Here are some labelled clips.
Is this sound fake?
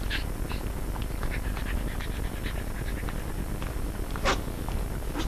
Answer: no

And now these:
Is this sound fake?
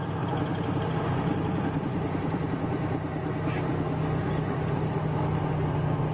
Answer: no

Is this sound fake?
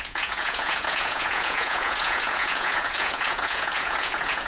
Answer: yes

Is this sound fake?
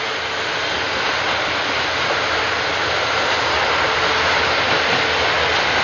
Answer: no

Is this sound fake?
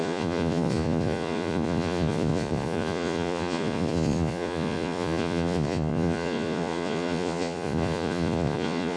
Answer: yes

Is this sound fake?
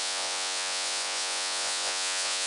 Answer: yes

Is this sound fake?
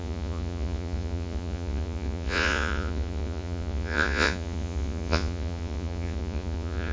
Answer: yes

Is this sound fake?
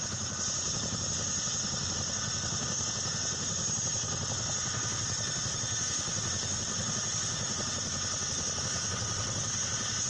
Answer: no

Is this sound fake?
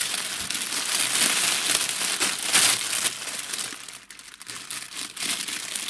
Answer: no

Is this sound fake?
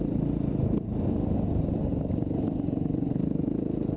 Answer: no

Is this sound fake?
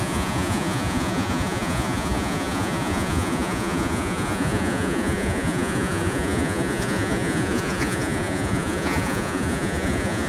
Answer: yes